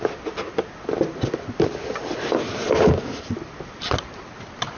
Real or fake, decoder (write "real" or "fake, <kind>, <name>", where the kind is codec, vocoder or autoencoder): real